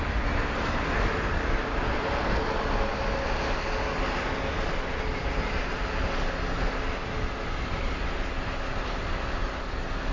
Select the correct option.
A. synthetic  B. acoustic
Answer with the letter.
B